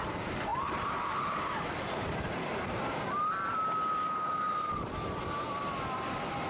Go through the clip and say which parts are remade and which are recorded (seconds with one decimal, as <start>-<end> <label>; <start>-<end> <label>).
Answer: 0.0-6.5 recorded